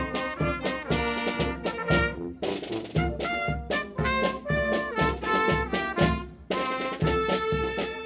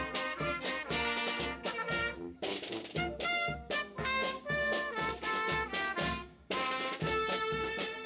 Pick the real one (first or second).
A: first